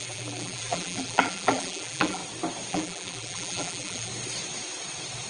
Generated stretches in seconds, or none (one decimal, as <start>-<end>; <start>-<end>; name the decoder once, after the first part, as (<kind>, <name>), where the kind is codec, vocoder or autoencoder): 0.0-2.2 (vocoder, BigVGAN v2); 2.7-4.1